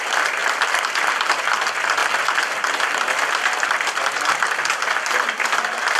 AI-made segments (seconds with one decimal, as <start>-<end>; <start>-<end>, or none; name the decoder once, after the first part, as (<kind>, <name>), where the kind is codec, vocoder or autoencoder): 0.4-1.5 (vocoder, BigVGAN v2)